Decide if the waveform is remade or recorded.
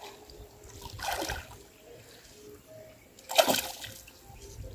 recorded